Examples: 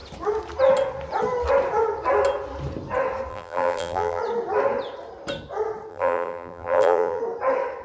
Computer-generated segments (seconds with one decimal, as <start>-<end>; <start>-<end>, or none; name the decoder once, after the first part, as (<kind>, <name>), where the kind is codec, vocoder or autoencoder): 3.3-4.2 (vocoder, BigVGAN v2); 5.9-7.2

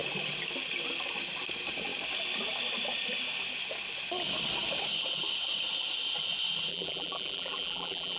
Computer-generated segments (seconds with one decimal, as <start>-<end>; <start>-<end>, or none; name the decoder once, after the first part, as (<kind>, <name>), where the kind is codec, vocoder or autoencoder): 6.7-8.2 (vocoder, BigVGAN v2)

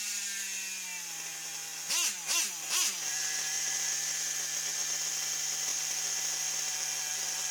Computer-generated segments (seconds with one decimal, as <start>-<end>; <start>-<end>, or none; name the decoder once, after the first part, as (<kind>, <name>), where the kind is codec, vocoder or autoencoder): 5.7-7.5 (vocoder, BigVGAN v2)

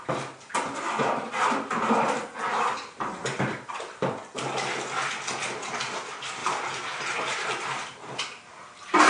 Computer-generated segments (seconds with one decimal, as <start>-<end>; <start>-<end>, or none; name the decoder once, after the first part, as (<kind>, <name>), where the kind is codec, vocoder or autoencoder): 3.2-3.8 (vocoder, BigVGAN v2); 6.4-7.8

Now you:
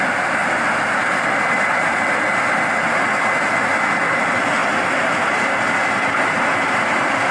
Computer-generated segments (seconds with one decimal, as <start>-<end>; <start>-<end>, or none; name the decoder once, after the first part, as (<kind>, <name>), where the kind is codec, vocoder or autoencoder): none

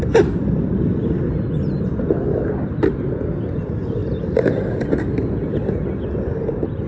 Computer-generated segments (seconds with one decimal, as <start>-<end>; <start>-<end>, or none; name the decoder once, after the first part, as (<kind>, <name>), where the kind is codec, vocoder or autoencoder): 4.0-4.5 (vocoder, BigVGAN v2)